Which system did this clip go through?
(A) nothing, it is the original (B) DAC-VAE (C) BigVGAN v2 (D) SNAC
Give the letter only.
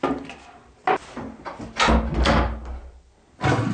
A